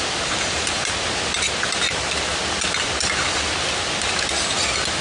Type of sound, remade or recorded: recorded